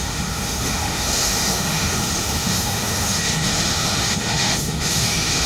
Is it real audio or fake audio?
fake